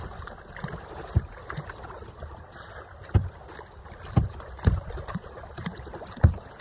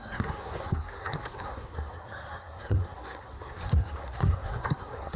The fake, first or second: second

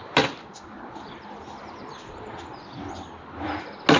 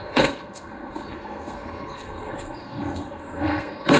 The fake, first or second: second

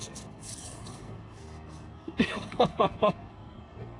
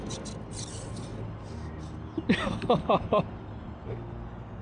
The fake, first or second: first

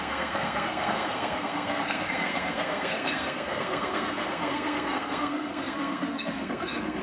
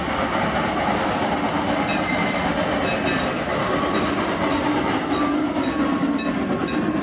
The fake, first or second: first